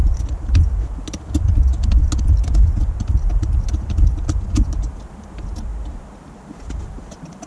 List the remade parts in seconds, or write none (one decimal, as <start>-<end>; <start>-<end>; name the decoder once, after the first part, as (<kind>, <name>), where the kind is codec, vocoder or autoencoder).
none